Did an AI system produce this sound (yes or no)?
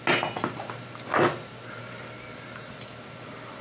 no